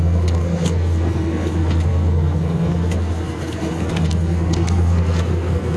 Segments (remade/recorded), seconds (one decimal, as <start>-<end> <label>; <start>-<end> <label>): 0.0-5.8 remade